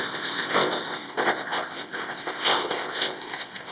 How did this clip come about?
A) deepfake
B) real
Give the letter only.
A